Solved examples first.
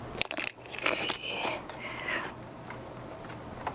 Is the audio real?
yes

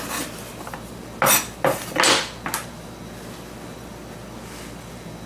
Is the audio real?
yes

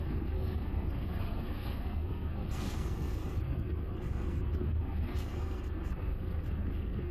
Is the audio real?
no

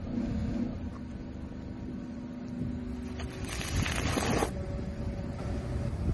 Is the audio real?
yes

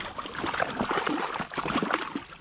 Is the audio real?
yes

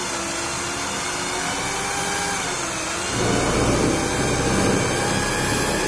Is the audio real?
yes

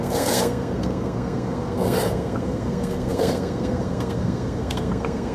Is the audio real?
no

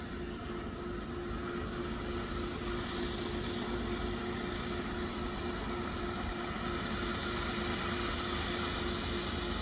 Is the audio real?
yes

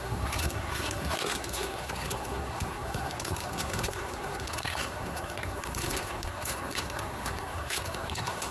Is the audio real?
no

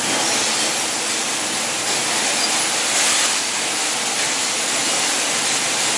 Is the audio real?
yes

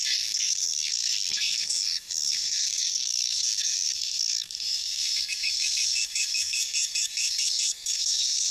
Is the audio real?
no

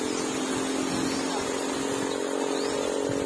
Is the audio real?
yes